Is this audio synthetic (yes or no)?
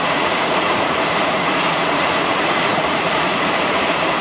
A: yes